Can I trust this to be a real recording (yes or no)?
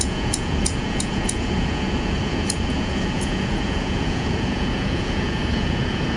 no